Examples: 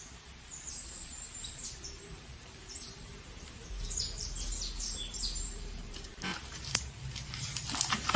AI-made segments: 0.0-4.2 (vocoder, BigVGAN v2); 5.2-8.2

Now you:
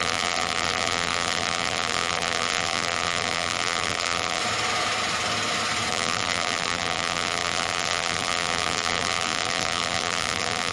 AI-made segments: 0.0-4.4 (vocoder, BigVGAN v2); 5.9-10.7

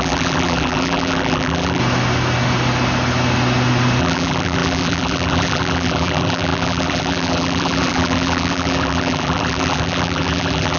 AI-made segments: 0.0-1.8 (vocoder, BigVGAN v2); 4.0-10.8

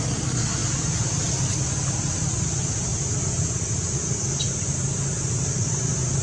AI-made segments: 0.0-0.6 (vocoder, BigVGAN v2); 2.4-2.9; 5.5-6.2

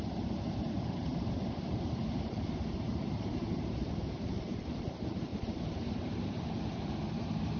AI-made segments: 0.0-1.1 (vocoder, BigVGAN v2); 1.7-7.6

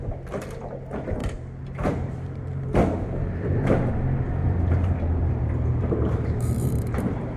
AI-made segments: 1.2-3.9 (vocoder, BigVGAN v2); 4.4-6.8

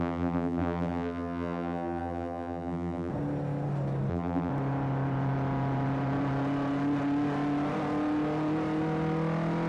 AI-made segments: 0.0-3.1 (vocoder, BigVGAN v2); 4.1-4.5